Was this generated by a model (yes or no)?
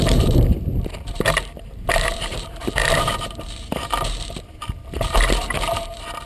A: yes